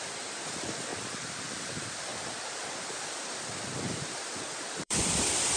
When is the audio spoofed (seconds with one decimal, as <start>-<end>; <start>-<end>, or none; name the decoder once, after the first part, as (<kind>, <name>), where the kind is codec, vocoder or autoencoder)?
0.0-0.9 (vocoder, BigVGAN v2); 1.4-2.1; 2.8-5.6